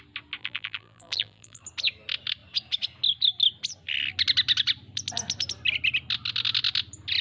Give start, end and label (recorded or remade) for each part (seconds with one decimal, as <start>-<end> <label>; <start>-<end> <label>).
0.0-0.4 recorded; 0.4-1.6 remade; 1.6-7.2 recorded